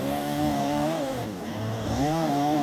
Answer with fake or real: fake